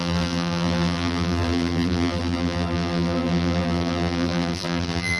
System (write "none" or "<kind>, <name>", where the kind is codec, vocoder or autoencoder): vocoder, BigVGAN v2